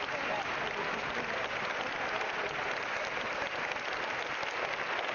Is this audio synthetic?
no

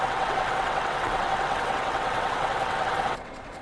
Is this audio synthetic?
yes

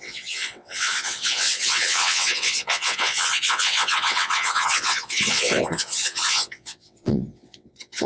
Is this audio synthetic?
yes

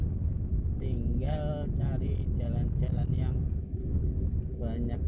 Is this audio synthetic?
no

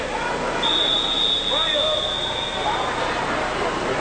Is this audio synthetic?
no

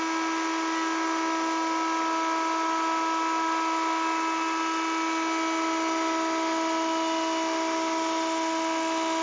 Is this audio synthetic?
no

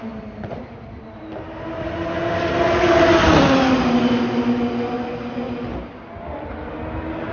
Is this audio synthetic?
no